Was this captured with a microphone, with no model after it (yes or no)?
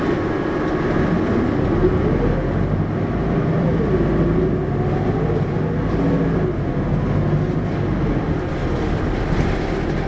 yes